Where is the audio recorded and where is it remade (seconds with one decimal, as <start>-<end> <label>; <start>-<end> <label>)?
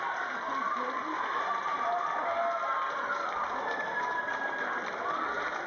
0.0-5.7 recorded